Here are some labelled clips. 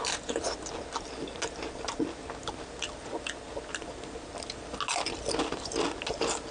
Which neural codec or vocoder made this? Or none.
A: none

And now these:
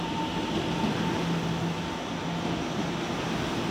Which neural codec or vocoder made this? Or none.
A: none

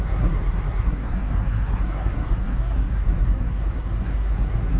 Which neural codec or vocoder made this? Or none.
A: codec, SNAC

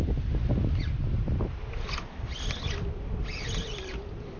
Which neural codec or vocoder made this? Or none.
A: none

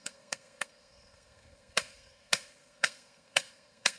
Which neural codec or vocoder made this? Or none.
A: codec, SNAC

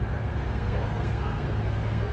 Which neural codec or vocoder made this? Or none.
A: codec, SNAC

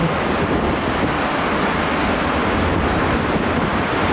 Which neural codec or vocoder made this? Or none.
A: none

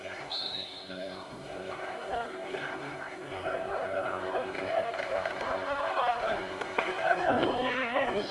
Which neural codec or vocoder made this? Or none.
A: codec, SNAC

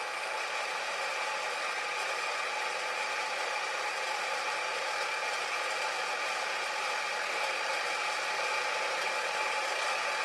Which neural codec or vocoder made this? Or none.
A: none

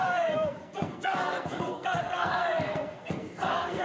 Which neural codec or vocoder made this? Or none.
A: codec, SNAC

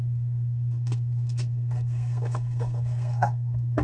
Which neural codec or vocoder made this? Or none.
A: codec, SNAC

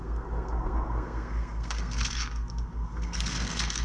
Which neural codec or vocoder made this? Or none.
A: codec, SNAC